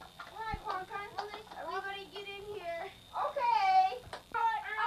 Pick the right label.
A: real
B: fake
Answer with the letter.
A